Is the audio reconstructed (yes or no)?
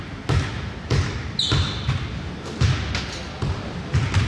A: no